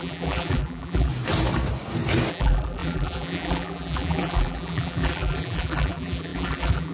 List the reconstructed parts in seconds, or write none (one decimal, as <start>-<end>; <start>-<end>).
0.0-1.1; 2.3-6.9